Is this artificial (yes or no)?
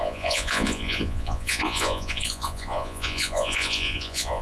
yes